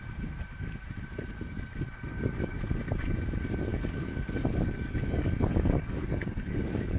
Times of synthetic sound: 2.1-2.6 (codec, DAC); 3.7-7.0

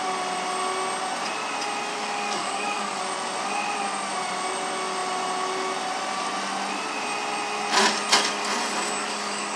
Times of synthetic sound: 1.9-3.0 (codec, DAC); 9.0-9.6

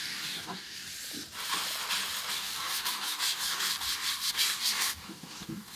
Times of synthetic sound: 0.0-0.9 (codec, DAC); 2.3-3.7; 4.3-5.8

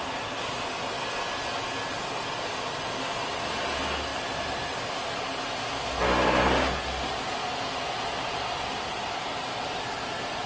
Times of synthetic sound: none

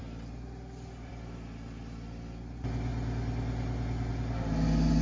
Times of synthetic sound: none

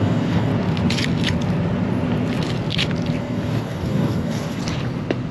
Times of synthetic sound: 0.0-0.5 (codec, DAC); 3.2-4.6